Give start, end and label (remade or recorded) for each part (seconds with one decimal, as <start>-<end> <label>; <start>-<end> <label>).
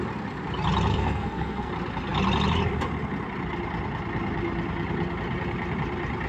0.0-0.9 recorded; 0.9-1.7 remade; 1.7-6.3 recorded